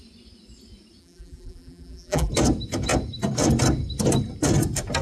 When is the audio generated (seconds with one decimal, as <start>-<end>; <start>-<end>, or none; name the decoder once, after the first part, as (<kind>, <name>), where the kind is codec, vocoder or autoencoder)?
1.0-2.3 (vocoder, BigVGAN v2)